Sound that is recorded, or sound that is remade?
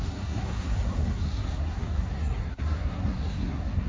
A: remade